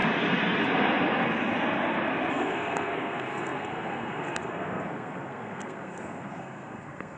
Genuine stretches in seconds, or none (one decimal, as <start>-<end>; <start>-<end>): 0.0-2.3